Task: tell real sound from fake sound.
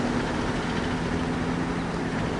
real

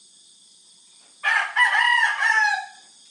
real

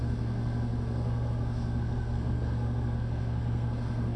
fake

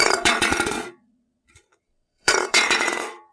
fake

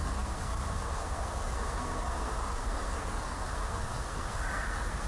fake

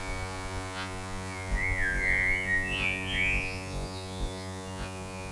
fake